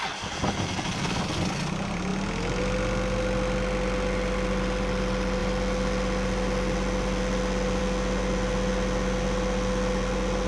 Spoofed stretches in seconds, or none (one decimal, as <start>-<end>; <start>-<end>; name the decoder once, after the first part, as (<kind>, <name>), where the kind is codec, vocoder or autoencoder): none